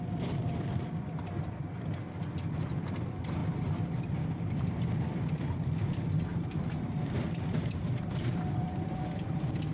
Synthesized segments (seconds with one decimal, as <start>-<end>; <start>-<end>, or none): 6.3-8.8